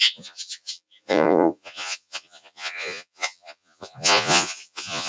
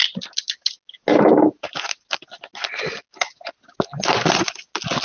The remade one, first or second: first